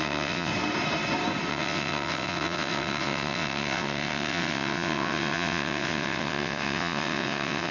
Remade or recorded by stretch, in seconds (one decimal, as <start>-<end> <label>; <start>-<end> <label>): 0.0-0.5 remade; 0.5-1.5 recorded; 1.5-7.7 remade